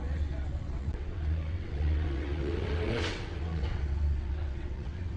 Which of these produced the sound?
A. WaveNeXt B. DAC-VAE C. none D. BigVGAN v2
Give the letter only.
A